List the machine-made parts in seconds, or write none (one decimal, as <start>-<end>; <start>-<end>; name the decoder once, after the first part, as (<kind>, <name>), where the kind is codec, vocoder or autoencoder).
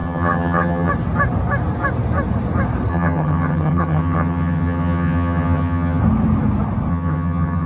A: 0.0-0.9 (vocoder, HiFi-GAN); 2.9-6.0; 6.9-7.7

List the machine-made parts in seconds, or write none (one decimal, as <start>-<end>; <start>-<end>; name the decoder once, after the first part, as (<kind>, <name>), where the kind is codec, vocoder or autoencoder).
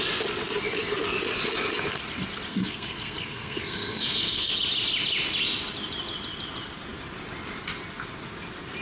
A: 2.5-4.5 (codec, SNAC)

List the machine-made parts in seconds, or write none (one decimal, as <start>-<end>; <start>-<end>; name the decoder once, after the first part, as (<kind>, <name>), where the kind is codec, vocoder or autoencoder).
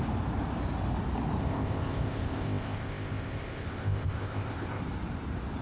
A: 1.4-4.8 (codec, ZipCodec)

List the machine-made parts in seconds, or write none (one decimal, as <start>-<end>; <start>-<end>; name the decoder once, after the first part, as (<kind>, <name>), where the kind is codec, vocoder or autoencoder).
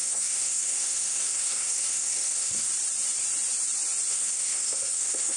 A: 0.0-2.7 (codec, SNAC); 4.1-5.4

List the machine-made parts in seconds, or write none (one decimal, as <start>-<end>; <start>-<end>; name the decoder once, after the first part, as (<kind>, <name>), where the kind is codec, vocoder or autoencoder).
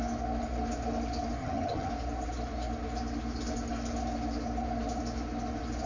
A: 1.4-1.9 (vocoder, HiFi-GAN)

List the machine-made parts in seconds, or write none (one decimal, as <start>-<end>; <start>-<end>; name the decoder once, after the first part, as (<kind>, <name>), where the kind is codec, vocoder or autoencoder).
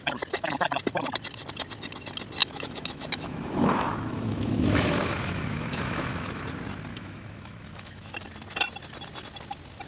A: 2.4-6.4 (autoencoder, DAC-VAE); 6.9-8.1